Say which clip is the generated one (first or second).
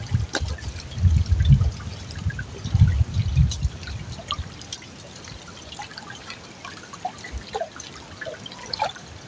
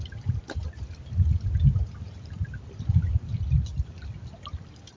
second